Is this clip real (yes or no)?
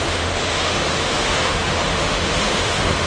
no